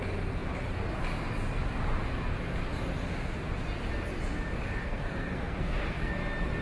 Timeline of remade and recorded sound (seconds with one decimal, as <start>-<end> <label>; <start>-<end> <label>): 0.0-4.8 recorded; 4.8-6.1 remade; 6.1-6.6 recorded

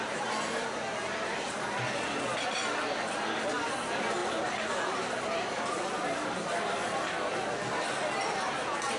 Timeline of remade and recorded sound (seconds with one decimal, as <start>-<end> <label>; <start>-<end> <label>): 0.0-9.0 recorded

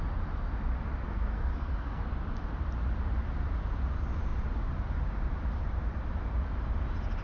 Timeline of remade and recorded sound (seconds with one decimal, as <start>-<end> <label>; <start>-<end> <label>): 0.0-1.1 recorded; 1.1-2.0 remade; 2.0-7.2 recorded